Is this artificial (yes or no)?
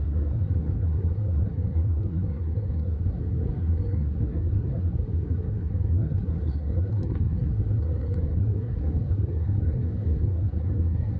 yes